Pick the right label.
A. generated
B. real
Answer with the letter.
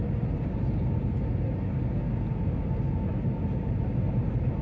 B